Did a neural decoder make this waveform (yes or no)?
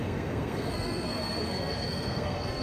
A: yes